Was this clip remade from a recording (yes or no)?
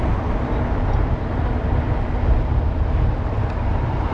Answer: no